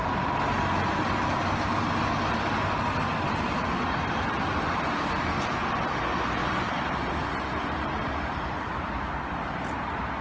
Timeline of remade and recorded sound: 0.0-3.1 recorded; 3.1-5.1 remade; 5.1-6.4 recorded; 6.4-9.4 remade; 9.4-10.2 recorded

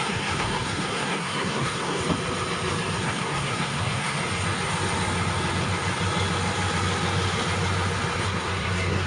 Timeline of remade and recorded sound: 0.0-2.0 remade; 2.0-3.0 recorded; 3.0-4.2 remade; 4.2-8.2 recorded; 8.2-9.1 remade